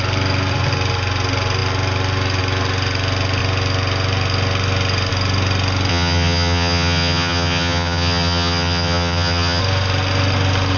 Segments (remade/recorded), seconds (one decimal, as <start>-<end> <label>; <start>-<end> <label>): 0.0-5.9 recorded; 5.9-9.6 remade; 9.6-10.8 recorded